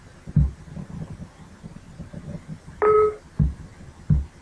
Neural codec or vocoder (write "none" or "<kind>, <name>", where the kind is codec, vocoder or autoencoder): none